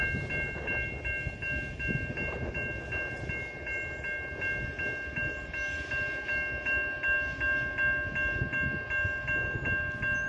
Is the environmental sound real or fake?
real